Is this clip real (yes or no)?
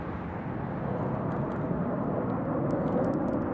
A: yes